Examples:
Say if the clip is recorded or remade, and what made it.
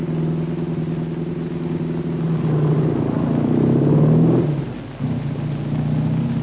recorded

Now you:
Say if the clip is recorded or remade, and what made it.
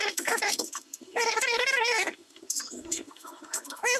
remade, autoencoder, DAC-VAE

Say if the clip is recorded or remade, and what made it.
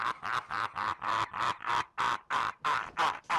recorded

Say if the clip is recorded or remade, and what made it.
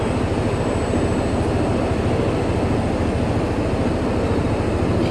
recorded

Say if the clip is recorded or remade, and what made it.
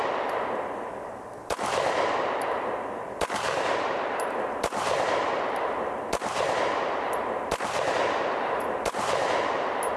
remade, vocoder, BigVGAN v2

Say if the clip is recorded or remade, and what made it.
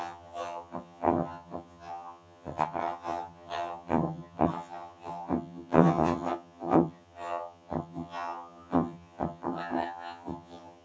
remade, vocoder, HiFi-GAN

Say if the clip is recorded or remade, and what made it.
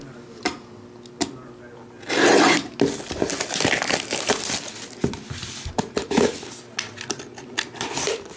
recorded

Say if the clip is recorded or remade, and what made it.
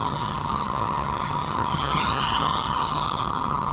remade, vocoder, HiFi-GAN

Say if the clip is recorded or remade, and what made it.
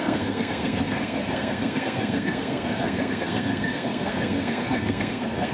remade, codec, SNAC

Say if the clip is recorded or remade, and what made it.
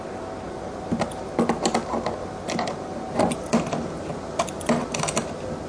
recorded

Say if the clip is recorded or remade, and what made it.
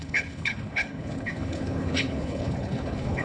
remade, codec, HILCodec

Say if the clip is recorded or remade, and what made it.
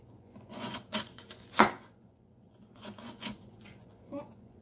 remade, vocoder, Vocos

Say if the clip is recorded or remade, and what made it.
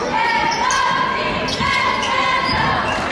recorded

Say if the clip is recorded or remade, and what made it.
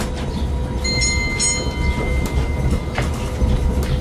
recorded